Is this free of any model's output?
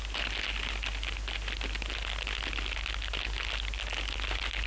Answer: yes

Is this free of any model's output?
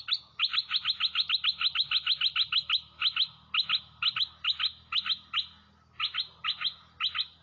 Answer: yes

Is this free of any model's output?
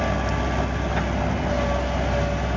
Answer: yes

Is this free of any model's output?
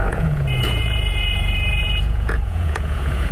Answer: no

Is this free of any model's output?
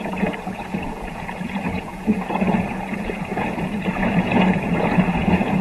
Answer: no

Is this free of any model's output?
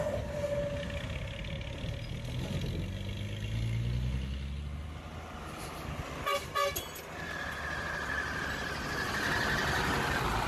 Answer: yes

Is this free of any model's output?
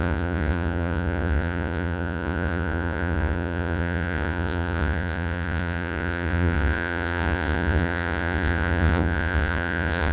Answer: no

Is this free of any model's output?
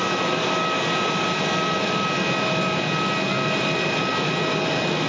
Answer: yes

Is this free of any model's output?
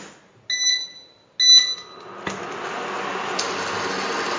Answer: yes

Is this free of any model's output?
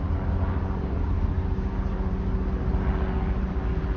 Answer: yes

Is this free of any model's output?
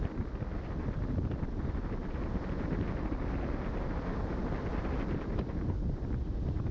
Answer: yes